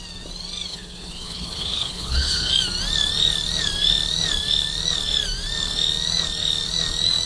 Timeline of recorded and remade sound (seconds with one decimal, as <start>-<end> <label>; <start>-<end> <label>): 0.0-0.7 recorded; 0.7-2.5 remade; 2.5-7.3 recorded